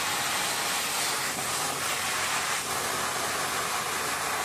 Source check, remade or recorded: recorded